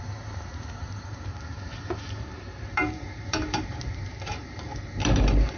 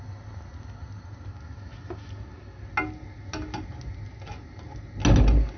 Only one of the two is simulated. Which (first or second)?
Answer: first